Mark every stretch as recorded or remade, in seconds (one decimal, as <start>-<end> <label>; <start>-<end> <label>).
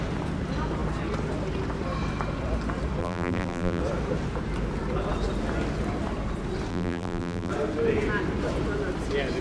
0.0-3.0 recorded; 3.0-3.8 remade; 3.8-6.7 recorded; 6.7-7.5 remade; 7.5-9.4 recorded